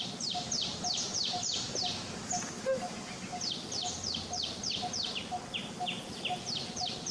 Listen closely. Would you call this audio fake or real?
real